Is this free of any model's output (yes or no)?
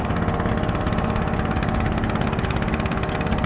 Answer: yes